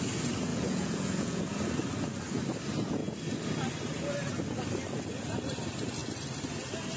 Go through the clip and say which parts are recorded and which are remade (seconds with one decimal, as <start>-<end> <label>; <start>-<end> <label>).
0.0-0.5 recorded; 0.5-1.4 remade; 1.4-7.0 recorded